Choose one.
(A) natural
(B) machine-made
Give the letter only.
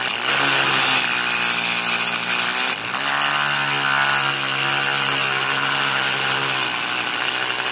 A